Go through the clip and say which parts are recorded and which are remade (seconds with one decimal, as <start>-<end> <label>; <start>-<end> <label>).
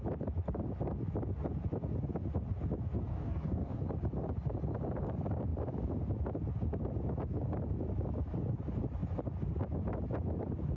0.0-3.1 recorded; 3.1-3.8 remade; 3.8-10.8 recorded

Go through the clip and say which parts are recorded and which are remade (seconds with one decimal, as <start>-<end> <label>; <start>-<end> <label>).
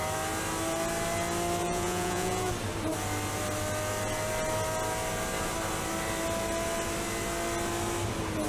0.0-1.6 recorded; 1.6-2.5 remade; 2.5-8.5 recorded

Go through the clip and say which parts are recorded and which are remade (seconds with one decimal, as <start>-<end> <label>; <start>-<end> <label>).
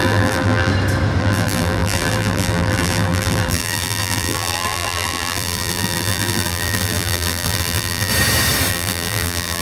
0.0-0.7 remade; 0.7-1.2 recorded; 1.2-8.1 remade; 8.1-8.7 recorded; 8.7-9.6 remade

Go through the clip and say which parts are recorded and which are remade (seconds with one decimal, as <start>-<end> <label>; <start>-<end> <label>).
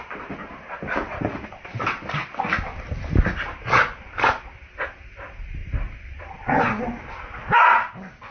0.0-8.3 recorded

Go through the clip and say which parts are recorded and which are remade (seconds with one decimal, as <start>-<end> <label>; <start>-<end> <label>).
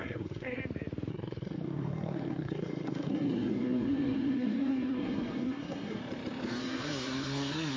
0.0-0.6 remade; 0.6-1.1 recorded; 1.1-6.0 remade; 6.0-6.6 recorded; 6.6-7.8 remade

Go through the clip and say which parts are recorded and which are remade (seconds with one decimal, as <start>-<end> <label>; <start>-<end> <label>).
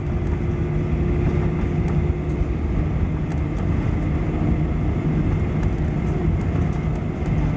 0.0-7.6 recorded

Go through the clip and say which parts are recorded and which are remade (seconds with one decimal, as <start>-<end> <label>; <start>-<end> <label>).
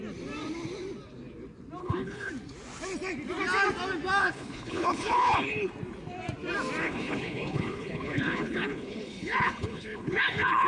0.0-1.8 recorded; 1.8-2.3 remade; 2.3-4.2 recorded; 4.2-5.7 remade; 5.7-6.8 recorded; 6.8-10.7 remade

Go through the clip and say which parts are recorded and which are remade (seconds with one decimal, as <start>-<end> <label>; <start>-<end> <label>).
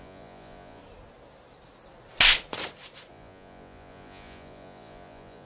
0.0-0.8 remade; 0.8-3.1 recorded; 3.1-5.5 remade